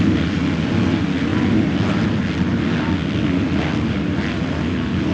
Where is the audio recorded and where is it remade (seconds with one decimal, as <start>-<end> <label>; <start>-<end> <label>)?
0.0-5.1 recorded